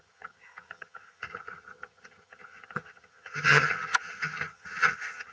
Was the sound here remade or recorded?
remade